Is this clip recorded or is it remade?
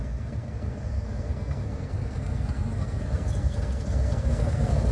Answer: remade